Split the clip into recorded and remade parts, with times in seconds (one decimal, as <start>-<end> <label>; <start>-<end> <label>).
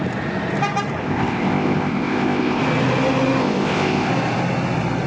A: 0.0-1.0 recorded; 1.0-2.6 remade; 2.6-3.4 recorded; 3.4-4.1 remade; 4.1-5.1 recorded